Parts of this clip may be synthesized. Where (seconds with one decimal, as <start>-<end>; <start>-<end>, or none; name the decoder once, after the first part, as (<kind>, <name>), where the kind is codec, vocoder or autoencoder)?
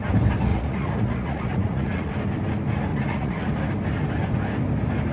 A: 0.5-2.1 (vocoder, Vocos); 2.9-3.5